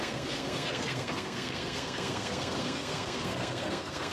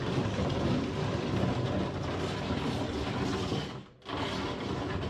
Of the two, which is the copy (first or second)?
first